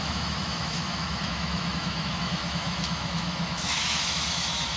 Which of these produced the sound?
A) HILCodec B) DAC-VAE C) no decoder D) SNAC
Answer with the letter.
B